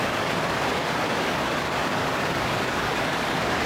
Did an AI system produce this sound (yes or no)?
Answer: yes